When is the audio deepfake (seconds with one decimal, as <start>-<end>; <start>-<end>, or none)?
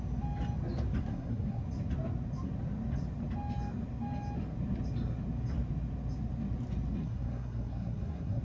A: 1.0-1.6; 7.0-8.4